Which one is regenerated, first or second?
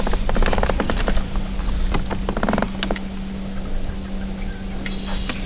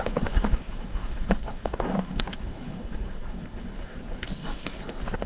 second